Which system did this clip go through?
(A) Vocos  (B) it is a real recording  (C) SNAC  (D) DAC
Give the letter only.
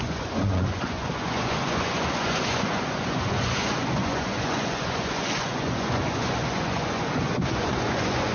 A